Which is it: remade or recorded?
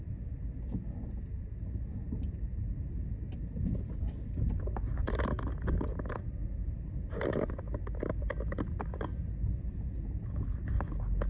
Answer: recorded